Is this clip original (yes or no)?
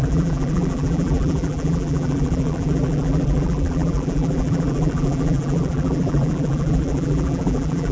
no